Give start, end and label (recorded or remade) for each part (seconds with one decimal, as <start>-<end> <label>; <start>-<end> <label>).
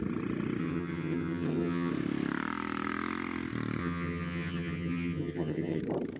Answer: 0.0-0.6 recorded; 0.6-1.9 remade; 1.9-3.8 recorded; 3.8-5.8 remade; 5.8-6.2 recorded